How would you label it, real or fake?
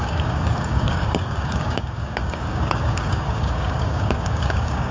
fake